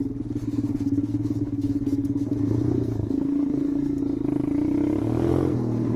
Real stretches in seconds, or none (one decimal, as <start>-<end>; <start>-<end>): 0.0-0.4; 4.0-5.0